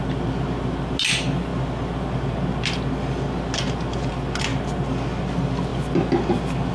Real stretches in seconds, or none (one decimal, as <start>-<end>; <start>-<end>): 0.0-6.7